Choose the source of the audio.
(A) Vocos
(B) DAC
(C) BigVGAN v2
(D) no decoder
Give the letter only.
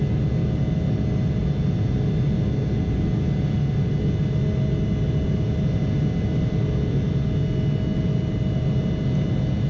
D